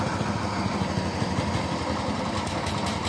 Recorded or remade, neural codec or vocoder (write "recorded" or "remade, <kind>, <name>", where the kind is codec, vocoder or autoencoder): recorded